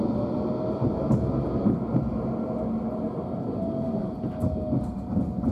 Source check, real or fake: real